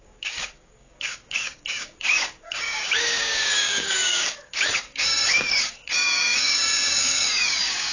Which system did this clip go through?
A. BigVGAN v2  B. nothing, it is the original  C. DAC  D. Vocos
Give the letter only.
C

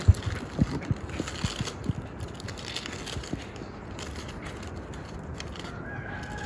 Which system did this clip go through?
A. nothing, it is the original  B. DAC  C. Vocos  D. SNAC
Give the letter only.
A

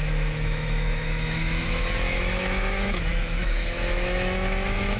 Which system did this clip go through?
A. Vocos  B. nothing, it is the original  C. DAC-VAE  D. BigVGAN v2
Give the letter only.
C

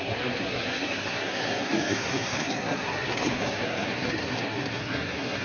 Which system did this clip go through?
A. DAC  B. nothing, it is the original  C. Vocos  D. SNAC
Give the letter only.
D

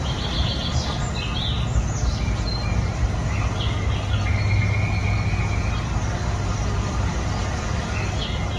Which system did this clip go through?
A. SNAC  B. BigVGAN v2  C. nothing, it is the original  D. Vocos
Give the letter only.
C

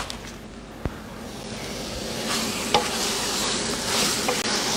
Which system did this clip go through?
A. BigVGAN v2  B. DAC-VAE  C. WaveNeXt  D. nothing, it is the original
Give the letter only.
D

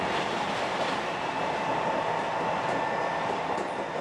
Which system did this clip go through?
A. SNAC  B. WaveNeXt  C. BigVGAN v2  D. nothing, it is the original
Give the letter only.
D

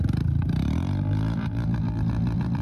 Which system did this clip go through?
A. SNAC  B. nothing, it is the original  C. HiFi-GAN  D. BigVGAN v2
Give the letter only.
D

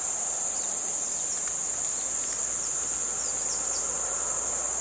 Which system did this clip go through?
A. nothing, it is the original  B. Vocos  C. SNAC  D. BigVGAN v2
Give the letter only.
A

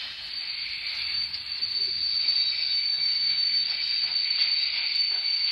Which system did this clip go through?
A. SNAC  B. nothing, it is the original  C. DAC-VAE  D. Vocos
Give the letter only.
B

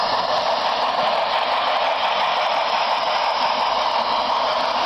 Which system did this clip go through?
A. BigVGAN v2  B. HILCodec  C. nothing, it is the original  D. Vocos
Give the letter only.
C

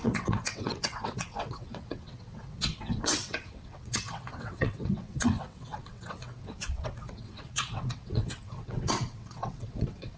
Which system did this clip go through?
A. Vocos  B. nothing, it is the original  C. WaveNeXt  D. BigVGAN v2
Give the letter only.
C